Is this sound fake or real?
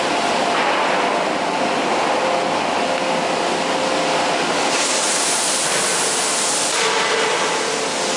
real